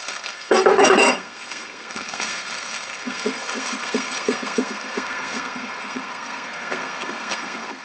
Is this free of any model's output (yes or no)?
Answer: no